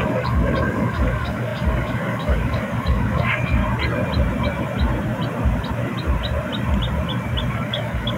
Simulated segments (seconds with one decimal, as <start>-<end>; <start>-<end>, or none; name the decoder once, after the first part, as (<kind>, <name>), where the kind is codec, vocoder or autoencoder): 0.0-3.6 (codec, DAC); 7.5-8.2